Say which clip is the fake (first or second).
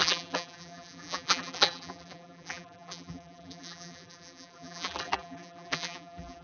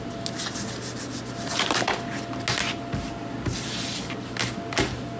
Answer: first